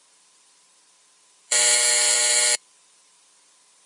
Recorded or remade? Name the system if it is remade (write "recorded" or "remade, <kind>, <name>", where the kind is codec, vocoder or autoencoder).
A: remade, vocoder, BigVGAN v2